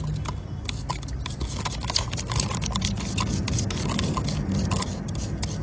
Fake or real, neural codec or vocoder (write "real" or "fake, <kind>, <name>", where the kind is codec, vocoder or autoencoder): real